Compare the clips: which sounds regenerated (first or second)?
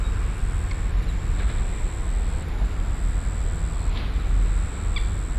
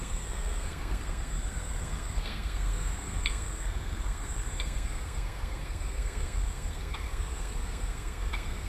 second